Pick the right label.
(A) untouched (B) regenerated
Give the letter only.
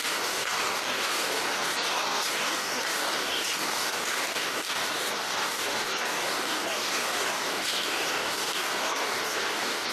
B